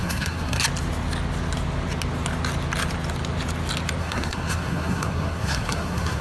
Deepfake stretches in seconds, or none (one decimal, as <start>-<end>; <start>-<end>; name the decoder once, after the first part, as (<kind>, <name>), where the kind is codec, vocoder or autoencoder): 0.0-0.6 (codec, SNAC); 4.0-6.2